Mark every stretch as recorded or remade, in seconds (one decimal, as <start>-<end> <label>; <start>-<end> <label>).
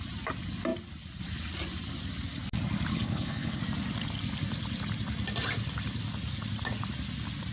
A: 0.0-2.9 recorded; 2.9-3.6 remade; 3.6-7.5 recorded